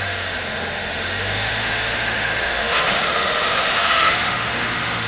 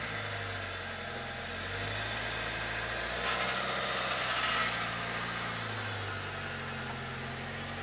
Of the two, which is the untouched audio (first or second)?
second